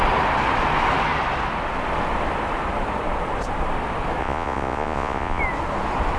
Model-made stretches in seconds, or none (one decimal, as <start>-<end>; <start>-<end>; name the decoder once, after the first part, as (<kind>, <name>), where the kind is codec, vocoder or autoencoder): 4.2-5.4 (vocoder, Vocos)